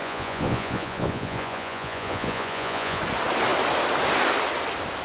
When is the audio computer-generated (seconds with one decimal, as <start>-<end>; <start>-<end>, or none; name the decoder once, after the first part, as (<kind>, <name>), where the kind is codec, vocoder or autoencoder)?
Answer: 0.0-3.0 (vocoder, Vocos)